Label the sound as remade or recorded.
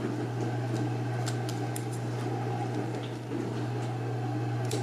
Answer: recorded